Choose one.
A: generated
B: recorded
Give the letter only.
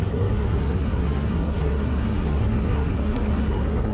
A